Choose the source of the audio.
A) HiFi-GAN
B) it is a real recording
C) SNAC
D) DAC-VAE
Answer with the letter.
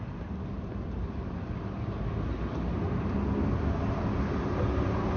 B